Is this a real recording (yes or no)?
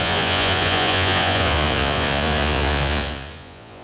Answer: no